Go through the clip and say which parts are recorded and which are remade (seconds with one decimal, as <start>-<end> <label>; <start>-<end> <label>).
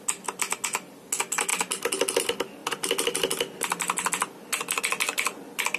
0.0-5.8 recorded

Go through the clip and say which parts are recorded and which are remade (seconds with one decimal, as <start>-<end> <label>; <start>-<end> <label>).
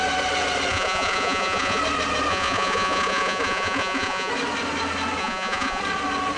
0.0-0.7 recorded; 0.7-1.8 remade; 1.8-2.3 recorded; 2.3-4.3 remade; 4.3-5.2 recorded; 5.2-5.8 remade; 5.8-6.4 recorded